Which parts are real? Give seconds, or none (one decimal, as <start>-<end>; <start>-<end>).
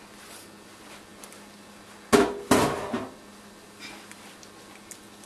0.0-5.3